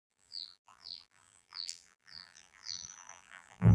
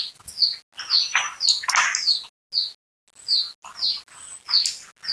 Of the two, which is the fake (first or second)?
first